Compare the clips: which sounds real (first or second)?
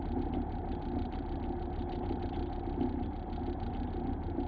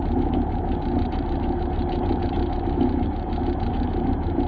first